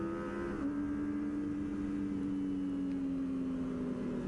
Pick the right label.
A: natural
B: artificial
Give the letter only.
A